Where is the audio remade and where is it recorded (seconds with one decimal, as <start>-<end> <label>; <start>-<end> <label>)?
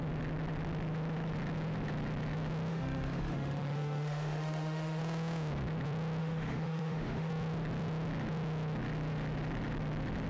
0.0-2.7 recorded; 2.7-5.0 remade; 5.0-6.2 recorded; 6.2-7.3 remade; 7.3-10.3 recorded